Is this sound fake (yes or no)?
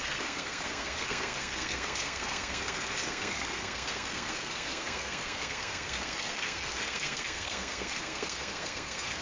yes